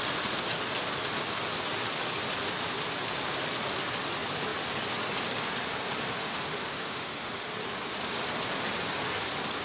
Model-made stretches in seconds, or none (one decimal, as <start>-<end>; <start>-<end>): 6.0-7.3

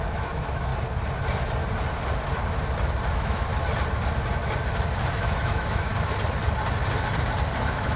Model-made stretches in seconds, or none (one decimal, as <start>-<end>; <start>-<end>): 0.0-0.7; 3.1-3.5; 5.1-5.9; 7.6-8.0